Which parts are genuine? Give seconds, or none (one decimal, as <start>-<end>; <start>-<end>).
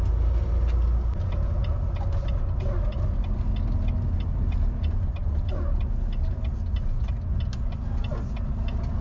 0.0-9.0